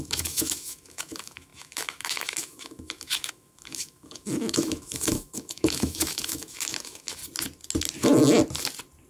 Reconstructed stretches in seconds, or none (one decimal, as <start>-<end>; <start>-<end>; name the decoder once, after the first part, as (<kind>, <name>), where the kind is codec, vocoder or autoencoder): 0.0-7.2 (autoencoder, DAC-VAE)